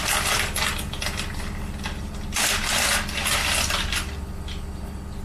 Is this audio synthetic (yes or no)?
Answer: no